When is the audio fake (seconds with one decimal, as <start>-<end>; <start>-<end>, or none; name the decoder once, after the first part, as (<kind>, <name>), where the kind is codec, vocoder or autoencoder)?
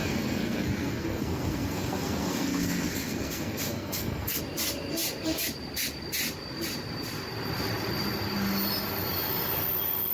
0.0-4.4 (codec, SNAC)